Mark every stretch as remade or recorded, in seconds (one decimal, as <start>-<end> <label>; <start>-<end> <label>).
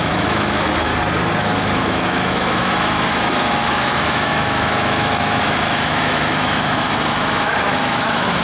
0.0-0.9 remade; 0.9-1.4 recorded; 1.4-8.4 remade